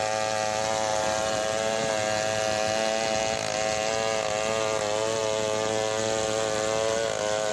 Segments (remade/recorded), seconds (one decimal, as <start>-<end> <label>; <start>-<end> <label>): 0.0-0.9 recorded; 0.9-1.9 remade; 1.9-7.5 recorded